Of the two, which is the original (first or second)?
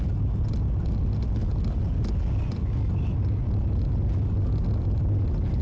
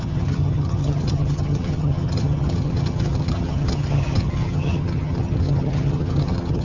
first